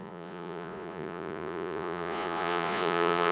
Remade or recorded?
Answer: remade